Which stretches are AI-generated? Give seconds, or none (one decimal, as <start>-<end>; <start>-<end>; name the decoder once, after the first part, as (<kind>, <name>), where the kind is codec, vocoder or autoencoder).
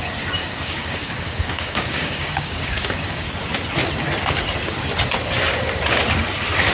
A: 0.4-3.3 (codec, DAC)